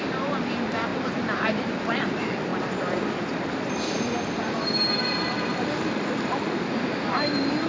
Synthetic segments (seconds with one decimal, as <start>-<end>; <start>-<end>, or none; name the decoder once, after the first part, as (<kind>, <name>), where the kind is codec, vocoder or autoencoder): 0.0-2.5 (vocoder, BigVGAN v2); 5.0-7.7